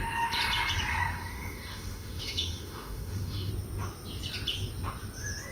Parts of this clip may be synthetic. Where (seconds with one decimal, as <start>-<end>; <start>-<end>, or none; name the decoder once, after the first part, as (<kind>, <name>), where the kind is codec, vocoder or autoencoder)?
0.9-3.5 (autoencoder, DAC-VAE)